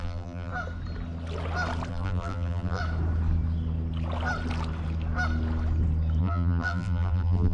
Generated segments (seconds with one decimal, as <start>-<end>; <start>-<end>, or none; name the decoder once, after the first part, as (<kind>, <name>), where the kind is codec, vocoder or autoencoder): 0.0-0.5 (vocoder, BigVGAN v2); 1.9-2.8; 6.2-7.5